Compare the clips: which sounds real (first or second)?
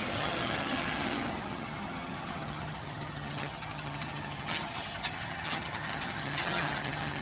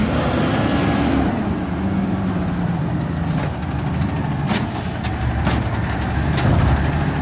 second